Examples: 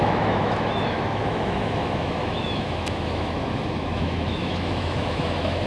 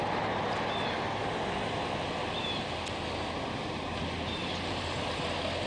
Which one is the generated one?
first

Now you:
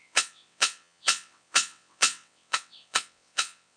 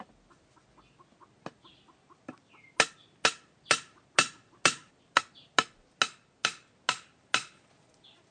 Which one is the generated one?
first